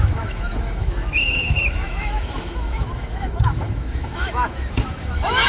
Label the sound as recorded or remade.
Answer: remade